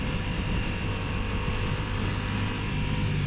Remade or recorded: recorded